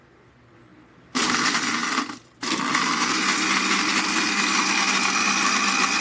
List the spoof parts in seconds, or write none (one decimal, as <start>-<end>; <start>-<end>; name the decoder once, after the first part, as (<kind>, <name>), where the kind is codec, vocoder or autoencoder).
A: 0.7-1.4 (vocoder, BigVGAN v2)